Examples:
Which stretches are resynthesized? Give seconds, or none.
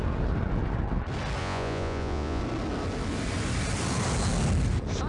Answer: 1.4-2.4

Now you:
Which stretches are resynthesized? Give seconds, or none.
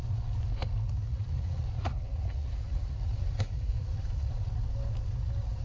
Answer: 1.1-4.5